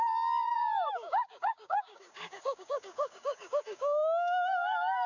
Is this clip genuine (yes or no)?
no